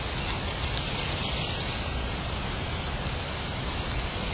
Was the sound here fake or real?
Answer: real